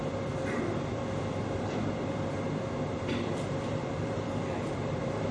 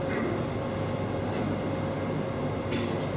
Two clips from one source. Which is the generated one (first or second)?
first